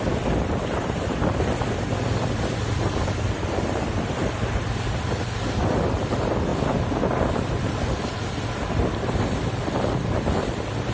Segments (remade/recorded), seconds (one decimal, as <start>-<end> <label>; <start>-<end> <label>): 0.0-6.5 remade; 6.5-7.3 recorded; 7.3-10.9 remade